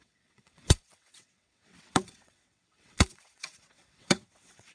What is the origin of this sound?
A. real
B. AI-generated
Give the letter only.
B